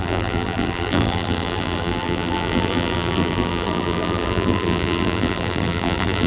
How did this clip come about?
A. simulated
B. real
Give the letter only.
A